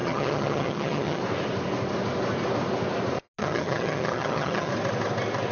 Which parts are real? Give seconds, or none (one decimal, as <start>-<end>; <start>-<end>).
1.2-3.4; 4.7-5.5